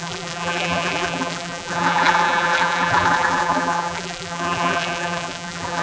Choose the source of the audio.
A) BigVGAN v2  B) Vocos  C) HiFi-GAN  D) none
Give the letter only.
A